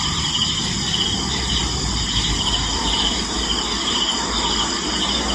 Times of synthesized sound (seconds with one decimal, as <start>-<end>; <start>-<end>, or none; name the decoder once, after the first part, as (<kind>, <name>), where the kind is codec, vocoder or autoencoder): none